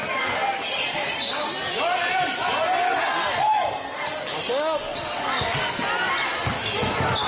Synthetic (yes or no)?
no